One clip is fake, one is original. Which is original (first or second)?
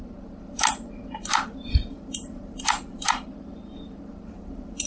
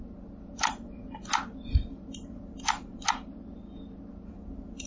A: second